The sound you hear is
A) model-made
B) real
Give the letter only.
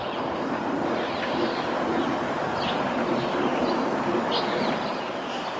B